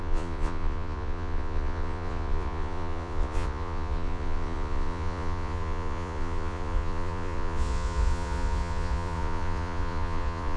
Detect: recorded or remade remade